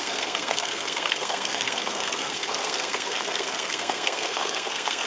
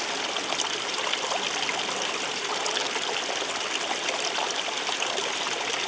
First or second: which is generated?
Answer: first